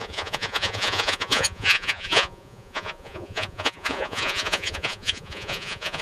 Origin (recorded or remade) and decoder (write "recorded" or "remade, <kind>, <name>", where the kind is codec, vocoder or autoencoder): remade, vocoder, Vocos